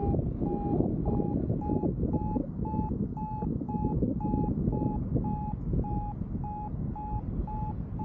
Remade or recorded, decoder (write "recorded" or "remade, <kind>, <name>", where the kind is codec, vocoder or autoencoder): recorded